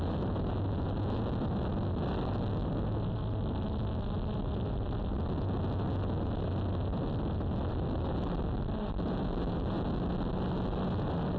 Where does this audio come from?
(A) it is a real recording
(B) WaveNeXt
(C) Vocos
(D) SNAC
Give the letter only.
A